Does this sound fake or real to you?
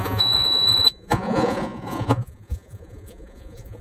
fake